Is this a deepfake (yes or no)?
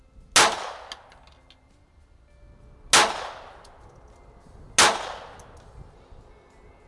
no